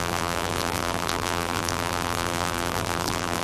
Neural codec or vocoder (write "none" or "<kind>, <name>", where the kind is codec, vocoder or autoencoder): vocoder, BigVGAN v2